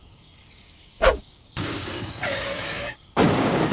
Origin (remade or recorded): remade